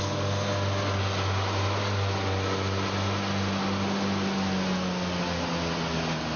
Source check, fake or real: real